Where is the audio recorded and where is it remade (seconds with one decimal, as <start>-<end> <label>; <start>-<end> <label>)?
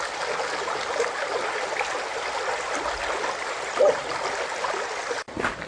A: 0.0-5.7 recorded